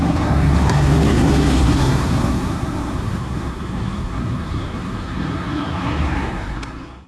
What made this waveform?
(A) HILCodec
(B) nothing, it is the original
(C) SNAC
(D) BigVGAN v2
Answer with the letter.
C